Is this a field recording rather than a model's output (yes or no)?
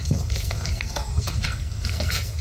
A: no